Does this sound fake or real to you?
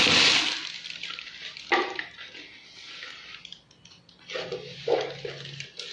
real